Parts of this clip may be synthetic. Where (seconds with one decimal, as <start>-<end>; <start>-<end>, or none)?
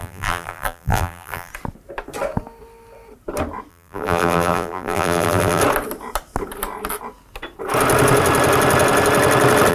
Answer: 0.0-1.5; 3.7-5.6